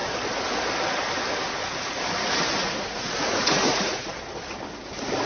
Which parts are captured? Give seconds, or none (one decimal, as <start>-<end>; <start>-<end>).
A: 0.0-2.6; 4.1-5.3